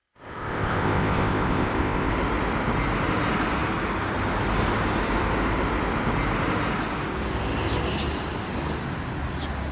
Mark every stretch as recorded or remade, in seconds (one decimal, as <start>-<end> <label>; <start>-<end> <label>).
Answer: 0.0-2.1 remade; 2.1-9.7 recorded